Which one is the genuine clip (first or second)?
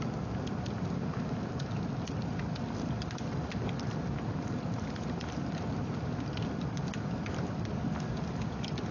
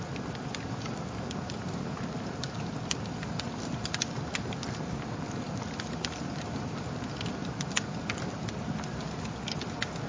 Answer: second